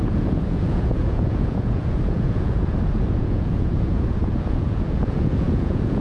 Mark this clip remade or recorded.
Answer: remade